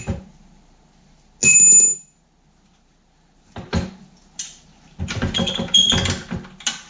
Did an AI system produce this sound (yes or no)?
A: no